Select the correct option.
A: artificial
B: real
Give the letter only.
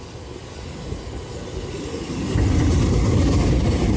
B